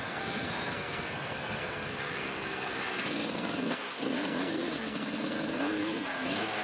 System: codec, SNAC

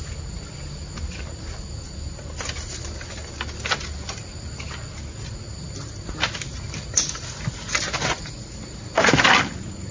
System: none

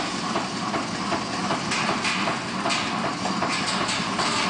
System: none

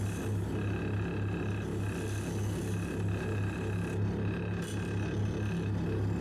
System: none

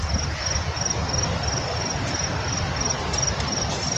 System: none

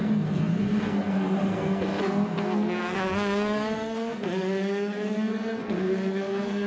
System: codec, SNAC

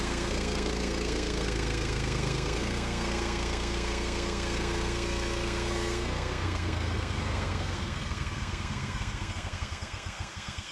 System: codec, SNAC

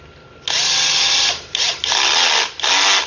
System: none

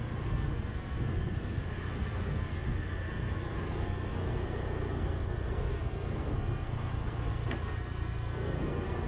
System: codec, SNAC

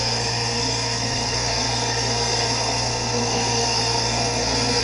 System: codec, SNAC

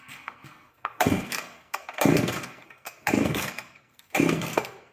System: codec, SNAC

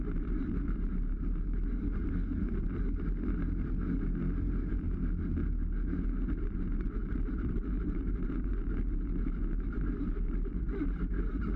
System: none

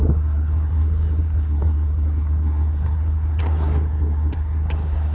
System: codec, SNAC